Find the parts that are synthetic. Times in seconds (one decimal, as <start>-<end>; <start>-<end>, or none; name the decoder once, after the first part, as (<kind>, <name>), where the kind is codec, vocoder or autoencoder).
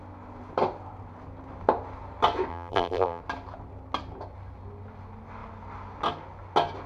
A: 2.5-3.2 (vocoder, BigVGAN v2)